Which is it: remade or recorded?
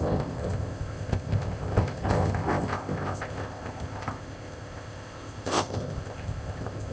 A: remade